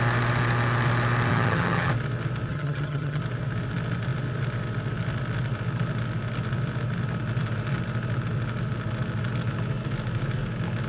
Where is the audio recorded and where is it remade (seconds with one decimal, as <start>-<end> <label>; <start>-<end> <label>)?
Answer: 0.0-1.3 recorded; 1.3-1.9 remade; 1.9-2.5 recorded; 2.5-3.2 remade; 3.2-10.9 recorded